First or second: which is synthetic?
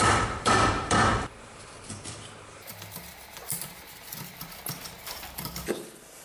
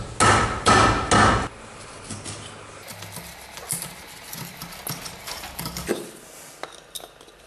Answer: first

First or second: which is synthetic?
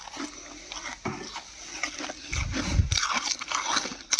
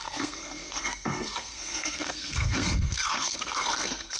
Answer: second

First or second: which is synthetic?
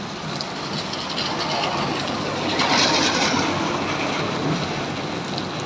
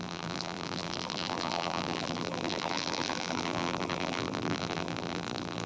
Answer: second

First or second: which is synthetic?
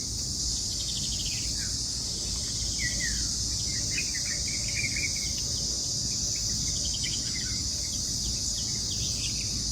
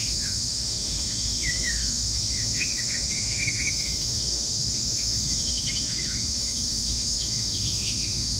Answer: second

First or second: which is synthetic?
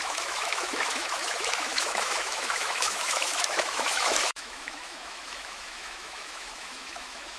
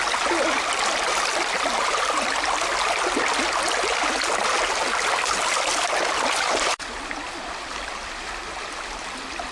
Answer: first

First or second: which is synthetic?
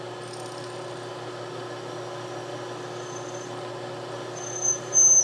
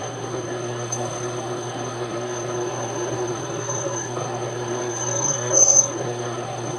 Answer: second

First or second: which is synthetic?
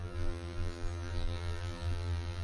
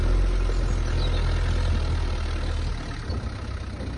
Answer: first